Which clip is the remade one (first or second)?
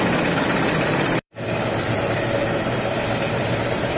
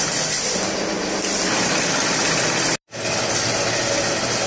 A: first